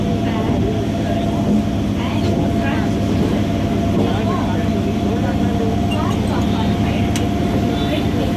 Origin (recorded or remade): recorded